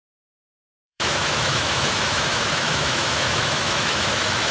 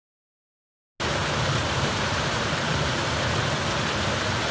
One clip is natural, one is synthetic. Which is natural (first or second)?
second